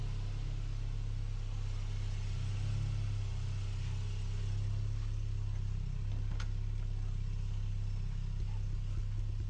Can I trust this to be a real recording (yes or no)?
yes